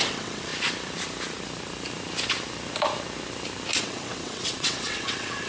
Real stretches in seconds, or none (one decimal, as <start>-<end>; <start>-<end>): 0.5-3.8